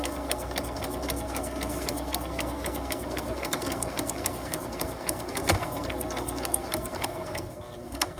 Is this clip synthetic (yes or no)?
yes